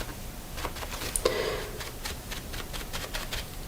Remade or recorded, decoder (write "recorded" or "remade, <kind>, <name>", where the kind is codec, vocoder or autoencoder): recorded